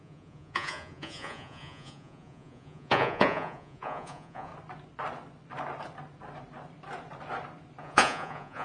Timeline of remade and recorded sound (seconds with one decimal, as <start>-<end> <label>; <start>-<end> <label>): 0.0-4.5 remade; 4.5-7.8 recorded; 7.8-8.6 remade